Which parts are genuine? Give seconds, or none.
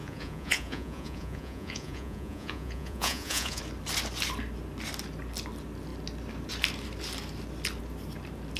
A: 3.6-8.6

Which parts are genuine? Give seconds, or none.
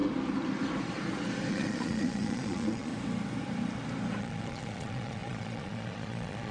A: 0.0-1.5; 2.9-4.2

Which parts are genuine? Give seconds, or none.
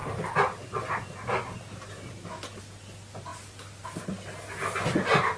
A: 0.0-5.4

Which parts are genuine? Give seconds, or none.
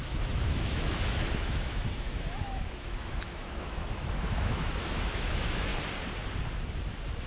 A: 5.7-7.3